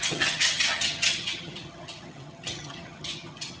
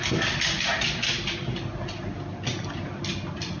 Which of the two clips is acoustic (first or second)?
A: second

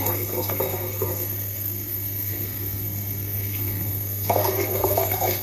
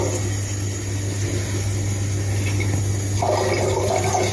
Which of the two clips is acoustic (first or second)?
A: second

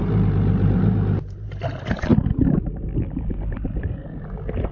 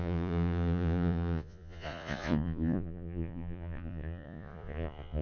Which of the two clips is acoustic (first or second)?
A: first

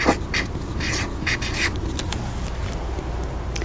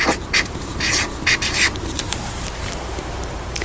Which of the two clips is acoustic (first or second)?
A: first